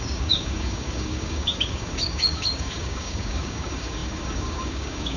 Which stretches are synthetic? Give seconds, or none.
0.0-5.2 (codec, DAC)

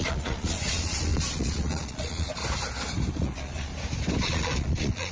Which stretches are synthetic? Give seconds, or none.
0.0-2.4 (vocoder, Vocos); 3.1-3.7; 4.2-5.1

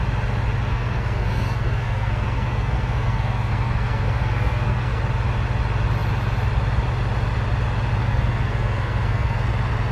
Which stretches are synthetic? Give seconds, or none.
0.7-5.0 (codec, SNAC); 8.0-9.4

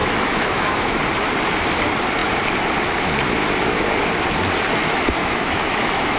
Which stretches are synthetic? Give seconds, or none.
0.0-1.0 (autoencoder, DAC-VAE); 5.2-6.2

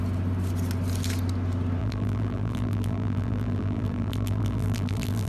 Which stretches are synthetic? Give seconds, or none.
1.8-5.3 (vocoder, BigVGAN v2)

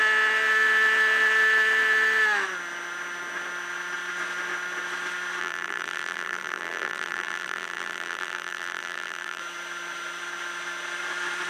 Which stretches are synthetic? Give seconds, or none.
5.4-9.4 (vocoder, BigVGAN v2)